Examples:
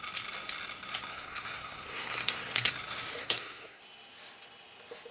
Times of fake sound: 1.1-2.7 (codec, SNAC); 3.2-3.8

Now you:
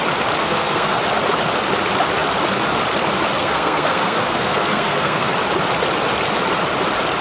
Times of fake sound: 0.4-1.0 (codec, SNAC); 3.4-5.3